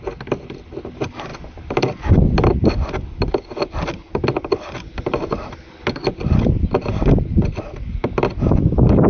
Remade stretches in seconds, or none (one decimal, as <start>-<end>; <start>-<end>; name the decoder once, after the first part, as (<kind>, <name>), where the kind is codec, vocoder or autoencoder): none